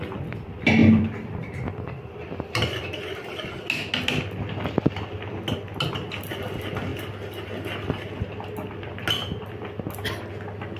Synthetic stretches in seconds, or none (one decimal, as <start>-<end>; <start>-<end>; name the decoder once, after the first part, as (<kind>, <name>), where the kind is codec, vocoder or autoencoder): 0.8-3.5 (vocoder, BigVGAN v2); 6.9-7.9